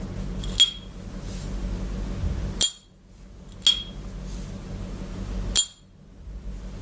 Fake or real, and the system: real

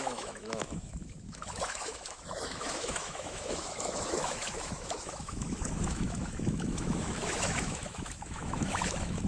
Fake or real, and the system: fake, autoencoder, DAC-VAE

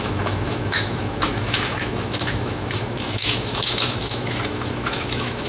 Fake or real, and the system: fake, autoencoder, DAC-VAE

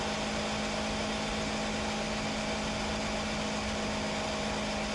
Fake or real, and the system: real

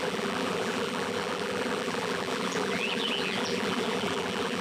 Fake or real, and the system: fake, vocoder, BigVGAN v2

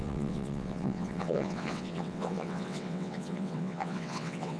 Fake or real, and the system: fake, vocoder, WaveNeXt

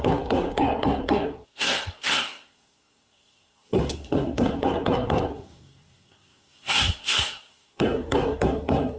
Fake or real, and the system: fake, codec, SNAC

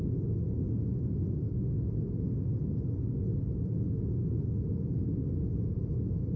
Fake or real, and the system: real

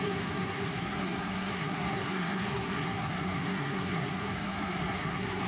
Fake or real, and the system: fake, codec, SNAC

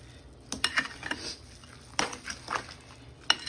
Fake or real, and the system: real